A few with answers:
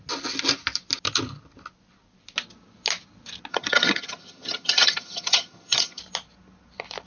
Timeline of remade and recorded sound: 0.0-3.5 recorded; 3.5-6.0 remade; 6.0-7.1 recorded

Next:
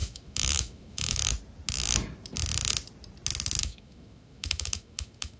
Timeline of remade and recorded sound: 0.0-1.2 remade; 1.2-3.6 recorded; 3.6-5.4 remade

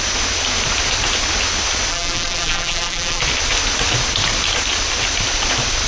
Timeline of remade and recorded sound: 0.0-1.9 recorded; 1.9-3.2 remade; 3.2-5.9 recorded

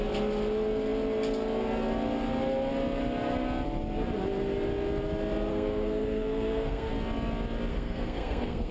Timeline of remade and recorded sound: 0.0-5.5 recorded; 5.5-6.9 remade; 6.9-7.7 recorded; 7.7-8.7 remade

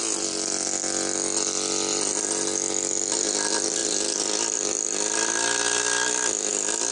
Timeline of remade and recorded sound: 0.0-6.9 recorded